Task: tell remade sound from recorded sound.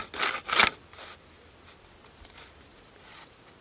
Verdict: recorded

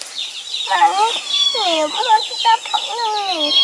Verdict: recorded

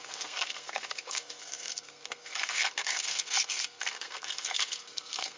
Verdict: remade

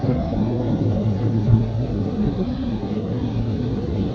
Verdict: remade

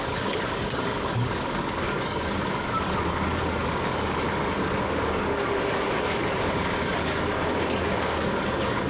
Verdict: remade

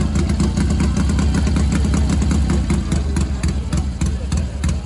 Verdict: recorded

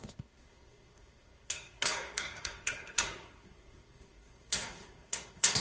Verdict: remade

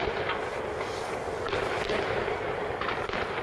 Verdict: recorded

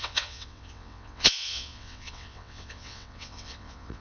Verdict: remade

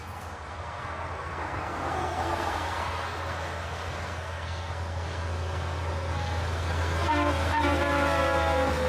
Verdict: remade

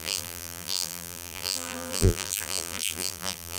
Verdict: remade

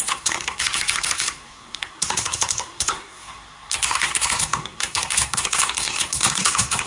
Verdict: remade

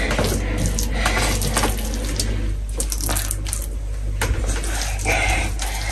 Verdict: recorded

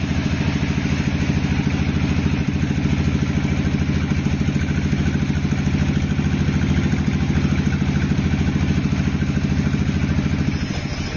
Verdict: recorded